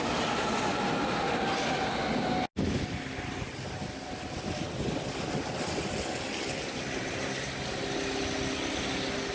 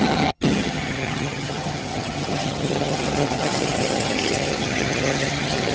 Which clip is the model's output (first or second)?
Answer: second